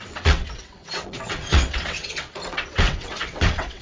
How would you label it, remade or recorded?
remade